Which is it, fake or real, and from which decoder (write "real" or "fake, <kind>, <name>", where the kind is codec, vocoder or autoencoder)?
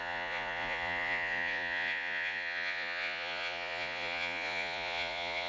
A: fake, vocoder, Vocos